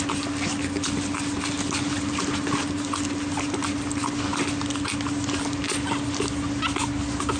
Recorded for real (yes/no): yes